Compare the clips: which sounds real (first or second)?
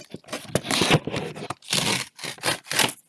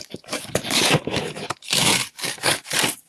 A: first